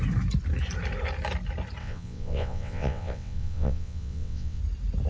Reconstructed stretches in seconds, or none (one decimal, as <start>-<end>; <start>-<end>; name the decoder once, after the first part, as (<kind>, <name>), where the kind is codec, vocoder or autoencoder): 1.8-4.6 (vocoder, WaveNeXt)